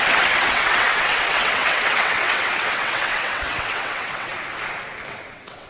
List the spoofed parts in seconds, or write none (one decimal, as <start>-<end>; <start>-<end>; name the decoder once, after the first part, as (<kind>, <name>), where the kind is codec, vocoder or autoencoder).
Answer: 0.0-4.3 (vocoder, WaveNeXt); 5.1-5.7